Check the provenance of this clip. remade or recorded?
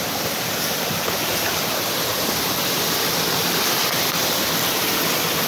remade